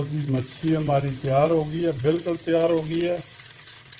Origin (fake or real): fake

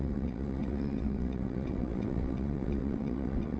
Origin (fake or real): fake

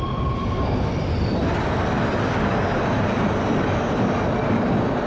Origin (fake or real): real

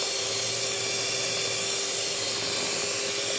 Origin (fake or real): real